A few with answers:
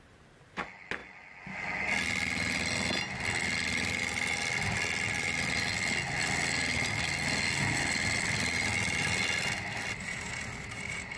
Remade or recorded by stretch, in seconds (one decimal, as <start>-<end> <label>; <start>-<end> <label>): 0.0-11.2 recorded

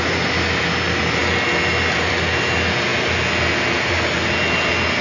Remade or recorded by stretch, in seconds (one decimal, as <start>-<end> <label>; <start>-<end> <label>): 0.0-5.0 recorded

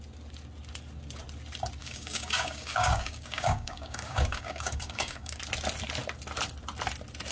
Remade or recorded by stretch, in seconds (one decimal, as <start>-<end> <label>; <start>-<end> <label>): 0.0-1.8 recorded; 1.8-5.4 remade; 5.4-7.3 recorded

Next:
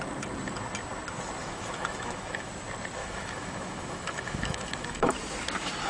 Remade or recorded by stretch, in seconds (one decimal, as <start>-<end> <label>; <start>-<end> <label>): 0.0-1.4 recorded; 1.4-2.5 remade; 2.5-3.0 recorded; 3.0-5.1 remade; 5.1-5.9 recorded

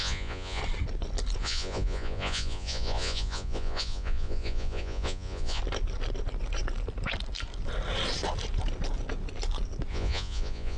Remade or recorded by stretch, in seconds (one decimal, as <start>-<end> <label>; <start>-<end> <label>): 0.0-0.6 remade; 0.6-1.4 recorded; 1.4-5.6 remade; 5.6-9.9 recorded; 9.9-10.8 remade